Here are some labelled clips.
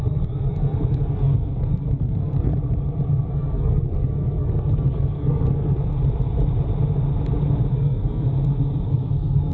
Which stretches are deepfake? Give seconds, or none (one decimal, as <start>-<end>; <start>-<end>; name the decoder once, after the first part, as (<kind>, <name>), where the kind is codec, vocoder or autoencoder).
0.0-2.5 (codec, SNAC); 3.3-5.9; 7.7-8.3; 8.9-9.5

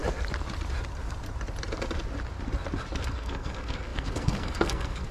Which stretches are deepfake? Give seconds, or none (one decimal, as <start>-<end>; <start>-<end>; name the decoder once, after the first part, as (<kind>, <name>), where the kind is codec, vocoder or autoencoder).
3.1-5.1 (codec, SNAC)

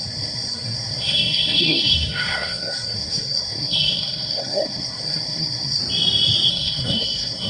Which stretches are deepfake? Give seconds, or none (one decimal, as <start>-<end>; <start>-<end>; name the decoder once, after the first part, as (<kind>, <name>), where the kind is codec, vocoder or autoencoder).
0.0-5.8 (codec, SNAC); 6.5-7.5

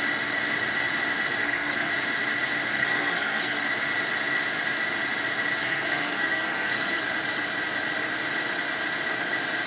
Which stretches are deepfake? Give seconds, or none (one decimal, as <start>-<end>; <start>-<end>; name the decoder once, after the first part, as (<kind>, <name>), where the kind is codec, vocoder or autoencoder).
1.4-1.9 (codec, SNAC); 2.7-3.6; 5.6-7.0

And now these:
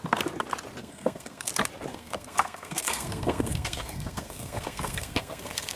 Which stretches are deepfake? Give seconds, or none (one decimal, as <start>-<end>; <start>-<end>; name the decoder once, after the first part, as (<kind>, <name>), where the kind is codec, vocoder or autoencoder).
0.8-1.5 (codec, SNAC); 1.9-5.8